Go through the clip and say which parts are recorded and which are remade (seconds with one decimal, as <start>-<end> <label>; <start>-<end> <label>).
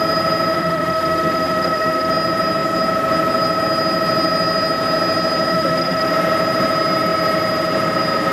0.0-0.5 recorded; 0.5-2.1 remade; 2.1-5.5 recorded; 5.5-6.1 remade; 6.1-8.3 recorded